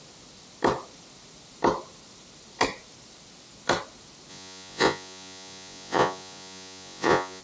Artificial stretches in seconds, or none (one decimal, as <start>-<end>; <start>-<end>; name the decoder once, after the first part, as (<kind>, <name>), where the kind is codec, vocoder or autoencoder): 4.3-7.4 (vocoder, Vocos)